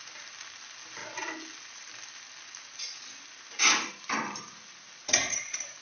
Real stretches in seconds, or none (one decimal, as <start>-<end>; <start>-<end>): 0.0-5.0